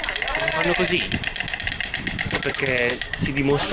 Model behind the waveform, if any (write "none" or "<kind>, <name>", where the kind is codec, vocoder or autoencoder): none